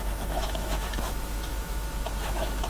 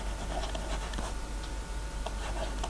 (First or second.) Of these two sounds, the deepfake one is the first